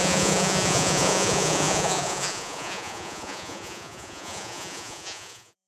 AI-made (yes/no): yes